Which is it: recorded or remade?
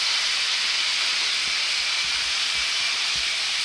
recorded